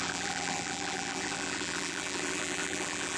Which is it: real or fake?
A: fake